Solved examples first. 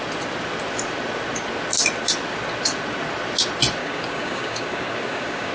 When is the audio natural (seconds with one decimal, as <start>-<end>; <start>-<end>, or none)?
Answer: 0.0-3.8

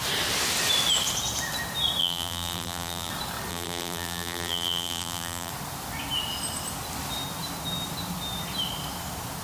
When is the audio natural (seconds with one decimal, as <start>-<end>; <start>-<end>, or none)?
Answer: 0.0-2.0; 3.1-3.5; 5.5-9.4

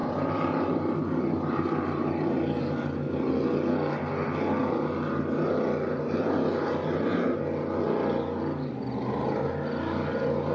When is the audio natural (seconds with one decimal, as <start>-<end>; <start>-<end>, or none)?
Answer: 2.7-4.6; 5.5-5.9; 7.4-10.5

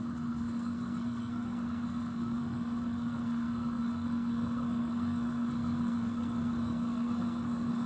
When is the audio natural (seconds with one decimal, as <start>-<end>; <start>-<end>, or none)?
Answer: none